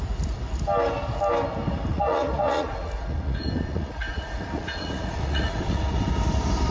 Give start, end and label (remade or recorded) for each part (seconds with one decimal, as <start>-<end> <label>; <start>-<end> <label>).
0.0-1.9 recorded; 1.9-5.9 remade; 5.9-6.7 recorded